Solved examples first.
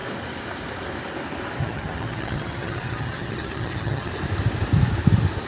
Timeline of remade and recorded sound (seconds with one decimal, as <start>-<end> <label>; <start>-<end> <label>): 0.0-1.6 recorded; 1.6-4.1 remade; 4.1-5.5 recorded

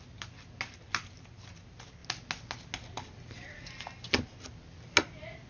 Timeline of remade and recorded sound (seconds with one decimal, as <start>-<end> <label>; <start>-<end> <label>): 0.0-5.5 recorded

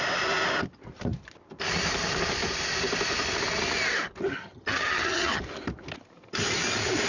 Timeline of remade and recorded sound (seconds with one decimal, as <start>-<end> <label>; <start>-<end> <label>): 0.0-4.4 recorded; 4.4-5.4 remade; 5.4-7.1 recorded

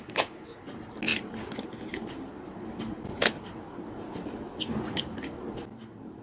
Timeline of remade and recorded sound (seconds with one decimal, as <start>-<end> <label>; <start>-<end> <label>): 0.0-6.2 recorded

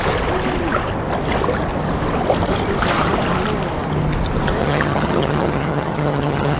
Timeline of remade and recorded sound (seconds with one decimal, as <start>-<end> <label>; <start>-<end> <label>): 0.0-4.6 recorded; 4.6-6.6 remade